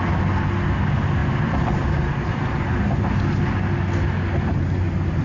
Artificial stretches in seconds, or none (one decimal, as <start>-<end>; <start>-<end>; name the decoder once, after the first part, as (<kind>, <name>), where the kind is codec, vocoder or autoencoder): none